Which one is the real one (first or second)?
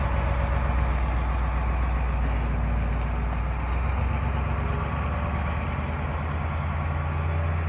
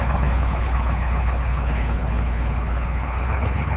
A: first